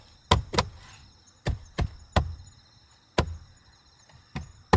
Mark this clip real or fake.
real